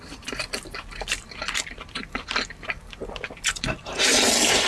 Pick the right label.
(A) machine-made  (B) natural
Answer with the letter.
A